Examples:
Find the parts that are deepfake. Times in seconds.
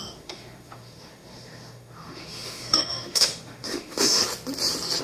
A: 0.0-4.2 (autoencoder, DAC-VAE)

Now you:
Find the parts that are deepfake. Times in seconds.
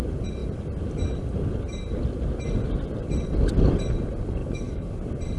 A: 4.4-4.9 (autoencoder, DAC-VAE)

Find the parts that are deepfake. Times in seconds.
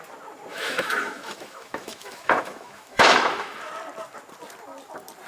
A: 0.5-3.7 (autoencoder, DAC-VAE)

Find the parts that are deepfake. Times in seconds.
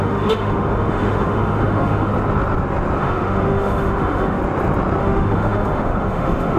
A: 0.0-2.1 (autoencoder, DAC-VAE); 3.0-4.4; 5.0-6.6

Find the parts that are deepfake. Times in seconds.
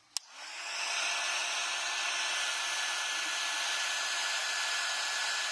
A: none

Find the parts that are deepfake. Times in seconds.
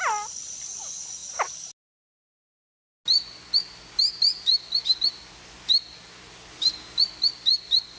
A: none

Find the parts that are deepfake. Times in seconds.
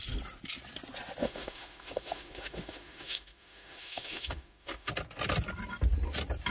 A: 1.2-4.9 (autoencoder, DAC-VAE)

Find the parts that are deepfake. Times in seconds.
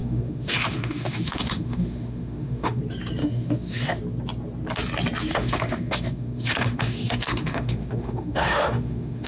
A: 0.0-2.8 (autoencoder, DAC-VAE); 3.2-4.0; 5.3-9.3